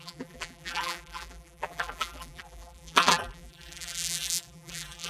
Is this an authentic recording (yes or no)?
no